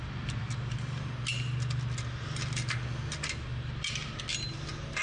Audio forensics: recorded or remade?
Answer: recorded